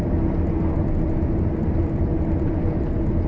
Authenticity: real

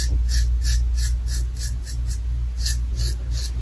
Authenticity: real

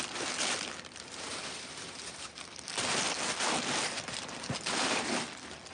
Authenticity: fake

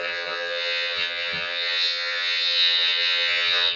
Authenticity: fake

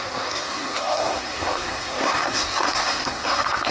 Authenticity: fake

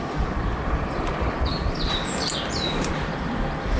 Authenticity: fake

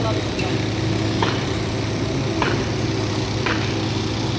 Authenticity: real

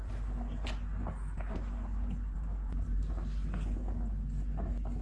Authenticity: real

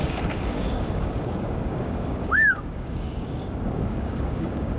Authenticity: fake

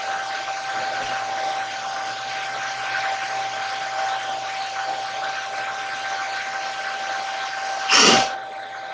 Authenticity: real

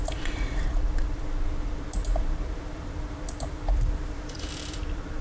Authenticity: fake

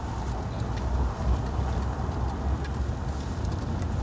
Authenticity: real